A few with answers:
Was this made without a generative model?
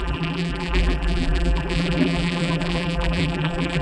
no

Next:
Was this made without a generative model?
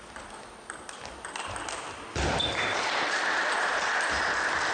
yes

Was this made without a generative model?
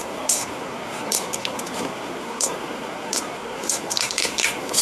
no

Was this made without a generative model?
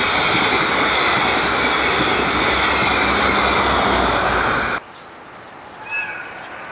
yes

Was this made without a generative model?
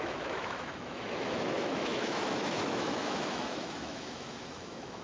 no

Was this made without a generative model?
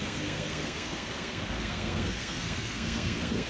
no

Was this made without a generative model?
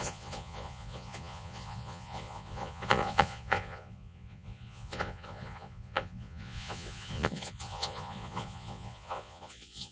no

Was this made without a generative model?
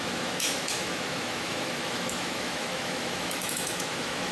no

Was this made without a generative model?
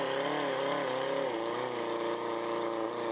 yes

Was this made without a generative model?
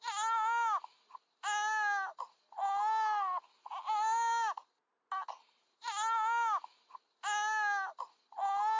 yes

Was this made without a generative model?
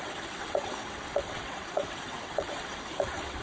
no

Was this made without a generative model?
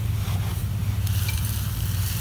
yes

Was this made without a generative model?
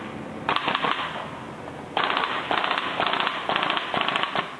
yes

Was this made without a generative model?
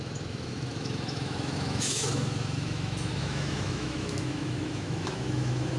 no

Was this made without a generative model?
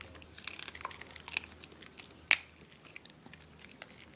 yes